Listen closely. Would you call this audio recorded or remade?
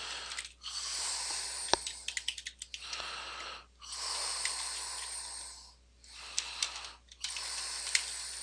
recorded